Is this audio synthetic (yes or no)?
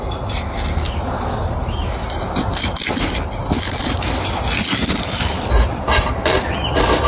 no